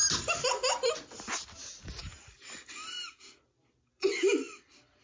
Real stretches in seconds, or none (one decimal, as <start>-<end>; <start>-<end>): 0.0-5.0